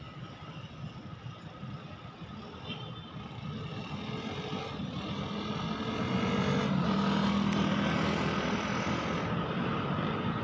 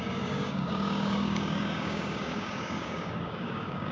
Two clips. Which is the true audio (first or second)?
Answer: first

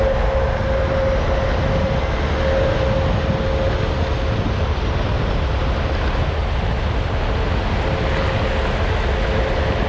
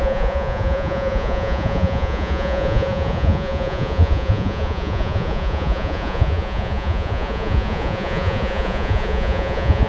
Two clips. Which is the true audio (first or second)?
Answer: first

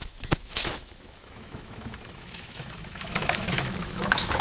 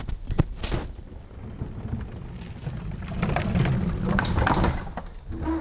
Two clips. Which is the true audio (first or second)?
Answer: second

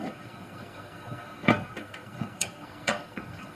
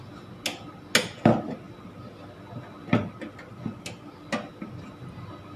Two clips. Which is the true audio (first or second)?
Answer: second